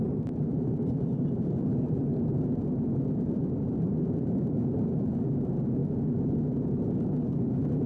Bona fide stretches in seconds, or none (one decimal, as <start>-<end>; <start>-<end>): 2.1-3.0; 5.8-7.5